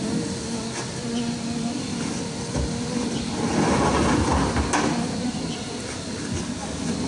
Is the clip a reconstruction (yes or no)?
no